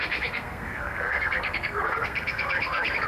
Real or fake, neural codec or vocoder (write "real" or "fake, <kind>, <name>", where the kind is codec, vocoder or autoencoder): fake, codec, SNAC